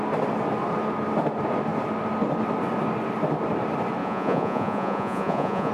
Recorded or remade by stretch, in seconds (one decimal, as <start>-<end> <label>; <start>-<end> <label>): 0.0-4.0 recorded; 4.0-5.7 remade